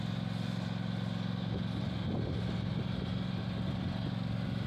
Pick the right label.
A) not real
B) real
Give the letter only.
B